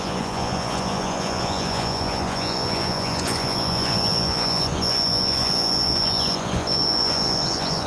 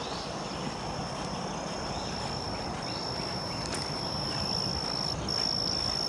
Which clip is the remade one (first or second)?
first